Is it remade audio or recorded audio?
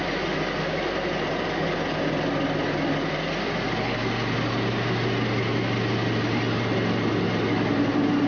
recorded